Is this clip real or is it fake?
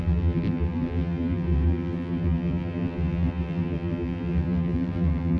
fake